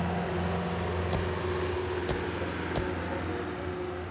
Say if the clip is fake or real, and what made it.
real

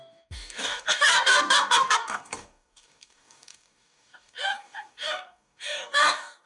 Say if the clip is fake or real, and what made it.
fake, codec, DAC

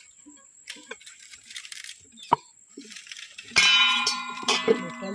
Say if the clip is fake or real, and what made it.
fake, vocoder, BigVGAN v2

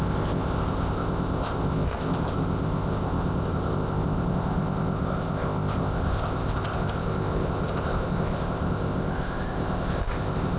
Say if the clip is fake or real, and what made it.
fake, codec, ZipCodec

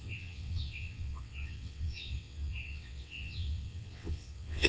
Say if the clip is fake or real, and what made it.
fake, vocoder, WaveNeXt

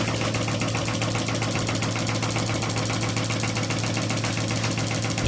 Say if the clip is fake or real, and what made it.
real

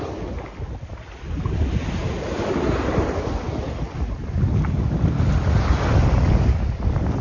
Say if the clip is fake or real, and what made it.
real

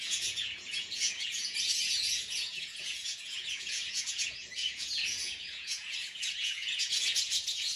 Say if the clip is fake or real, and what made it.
fake, vocoder, Vocos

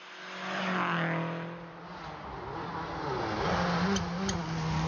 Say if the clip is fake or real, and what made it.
real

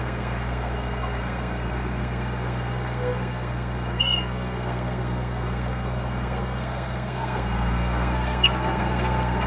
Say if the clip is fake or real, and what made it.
fake, codec, SNAC